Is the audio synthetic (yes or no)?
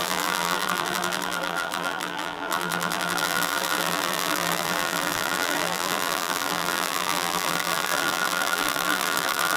yes